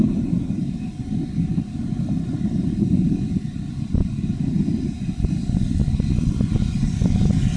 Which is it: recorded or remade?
recorded